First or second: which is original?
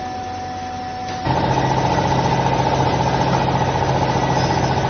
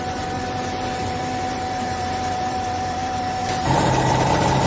first